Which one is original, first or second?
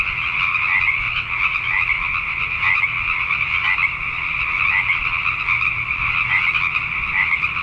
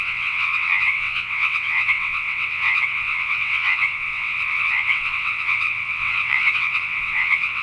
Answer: first